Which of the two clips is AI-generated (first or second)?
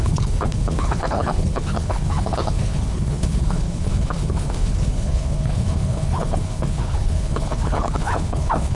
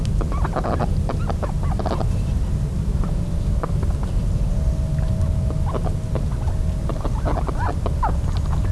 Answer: first